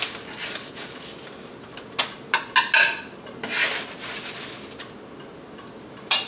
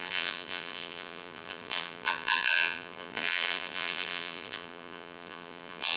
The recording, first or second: first